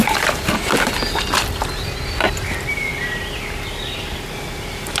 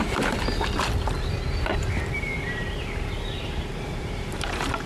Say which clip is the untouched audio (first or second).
first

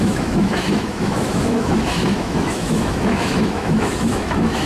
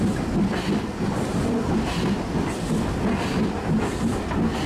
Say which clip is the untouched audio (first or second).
second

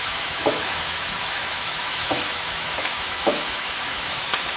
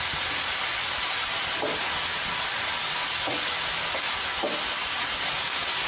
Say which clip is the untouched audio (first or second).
second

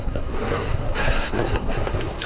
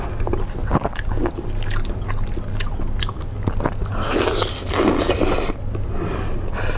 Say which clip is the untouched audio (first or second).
second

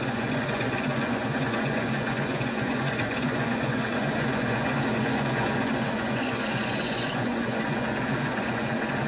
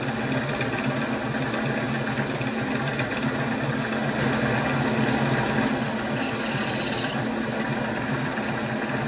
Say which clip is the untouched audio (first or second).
second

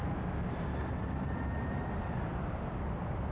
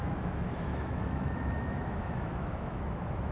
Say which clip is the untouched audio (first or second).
first